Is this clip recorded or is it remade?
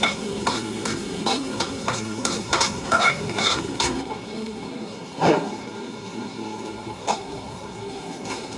remade